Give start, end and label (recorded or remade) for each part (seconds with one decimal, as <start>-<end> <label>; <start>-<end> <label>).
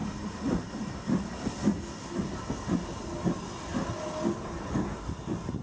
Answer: 0.0-5.6 recorded